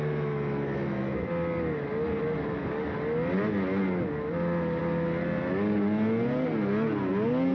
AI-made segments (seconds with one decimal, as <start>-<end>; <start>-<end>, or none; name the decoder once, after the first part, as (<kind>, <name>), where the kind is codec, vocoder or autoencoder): none